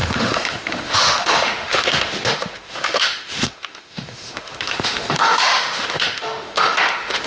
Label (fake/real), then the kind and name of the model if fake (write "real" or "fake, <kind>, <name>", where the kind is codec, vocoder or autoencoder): fake, autoencoder, DAC-VAE